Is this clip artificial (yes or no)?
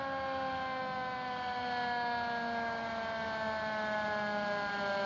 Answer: no